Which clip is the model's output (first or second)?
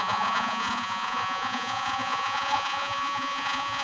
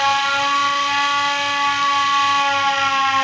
first